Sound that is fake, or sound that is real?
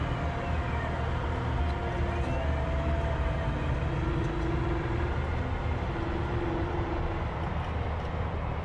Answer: real